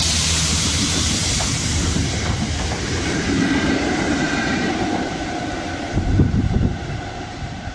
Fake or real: fake